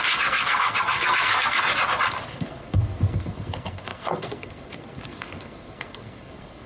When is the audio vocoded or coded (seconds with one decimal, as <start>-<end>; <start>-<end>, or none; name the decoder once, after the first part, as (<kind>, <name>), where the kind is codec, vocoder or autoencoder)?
0.0-1.7 (codec, SNAC); 2.3-6.7